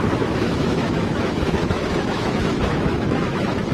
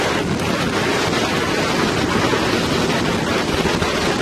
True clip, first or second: second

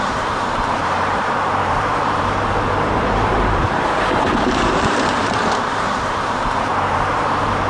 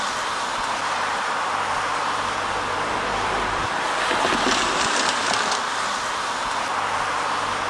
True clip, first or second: second